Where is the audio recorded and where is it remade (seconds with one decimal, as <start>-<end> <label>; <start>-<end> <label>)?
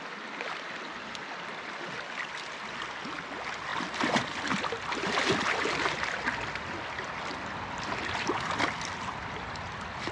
0.0-10.1 recorded